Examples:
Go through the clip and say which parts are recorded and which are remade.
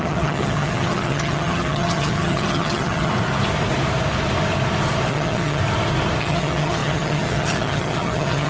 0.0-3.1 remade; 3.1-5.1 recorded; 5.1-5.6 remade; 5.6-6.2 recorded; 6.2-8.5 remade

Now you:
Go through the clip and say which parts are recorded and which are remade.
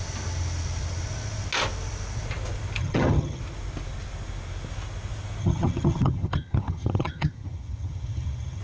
0.0-2.8 recorded; 2.8-3.4 remade; 3.4-5.4 recorded; 5.4-8.6 remade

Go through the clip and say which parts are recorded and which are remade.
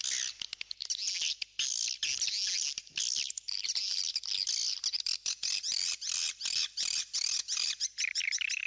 0.0-8.7 recorded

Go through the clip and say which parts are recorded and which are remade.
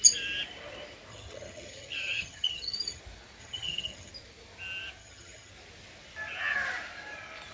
0.0-1.1 recorded; 1.1-3.0 remade; 3.0-3.4 recorded; 3.4-4.1 remade; 4.1-5.0 recorded; 5.0-5.5 remade; 5.5-7.5 recorded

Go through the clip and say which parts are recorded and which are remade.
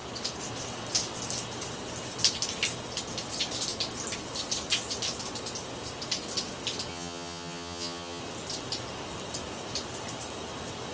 0.0-6.9 recorded; 6.9-8.2 remade; 8.2-10.9 recorded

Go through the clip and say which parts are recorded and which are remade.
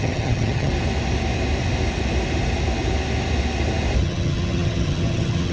0.0-0.7 remade; 0.7-4.0 recorded; 4.0-5.5 remade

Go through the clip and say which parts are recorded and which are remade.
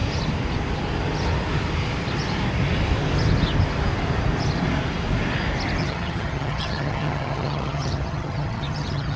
0.0-5.8 recorded; 5.8-9.2 remade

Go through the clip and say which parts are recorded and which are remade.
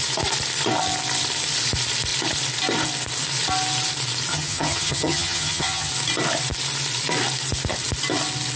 0.0-4.3 recorded; 4.3-5.9 remade; 5.9-8.6 recorded